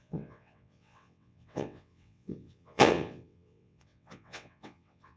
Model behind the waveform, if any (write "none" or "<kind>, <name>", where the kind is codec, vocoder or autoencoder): vocoder, WaveNeXt